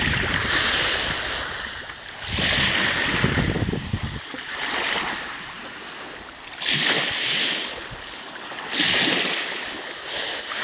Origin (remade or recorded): recorded